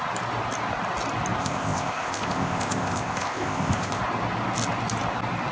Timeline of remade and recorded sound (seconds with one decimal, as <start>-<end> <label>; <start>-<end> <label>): 0.0-1.4 recorded; 1.4-4.0 remade; 4.0-5.5 recorded